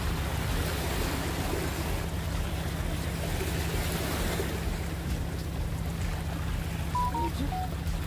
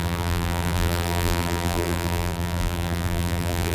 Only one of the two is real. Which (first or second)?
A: first